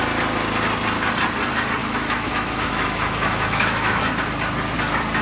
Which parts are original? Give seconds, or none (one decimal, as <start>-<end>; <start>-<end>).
0.0-1.8; 4.0-5.2